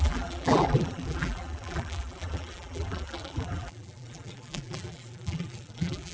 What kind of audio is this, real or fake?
fake